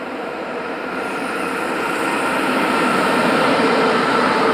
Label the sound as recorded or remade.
remade